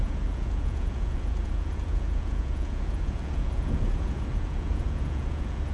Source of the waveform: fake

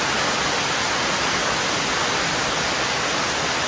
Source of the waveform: real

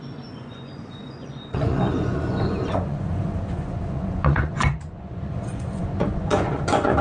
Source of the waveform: fake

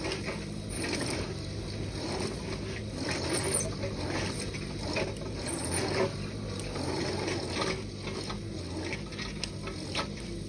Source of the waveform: real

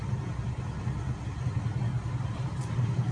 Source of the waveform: real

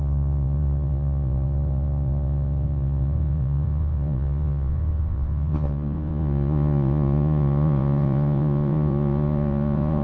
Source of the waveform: fake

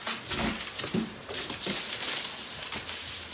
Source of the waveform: real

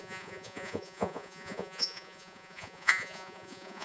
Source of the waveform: fake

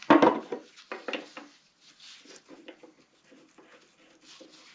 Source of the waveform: real